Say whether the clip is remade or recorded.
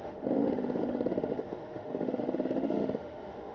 remade